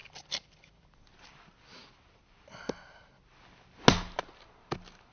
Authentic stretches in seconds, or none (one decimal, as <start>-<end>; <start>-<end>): 1.1-5.1